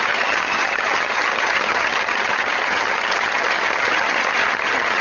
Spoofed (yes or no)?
yes